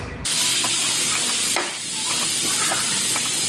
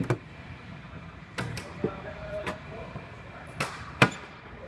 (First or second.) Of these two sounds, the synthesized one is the second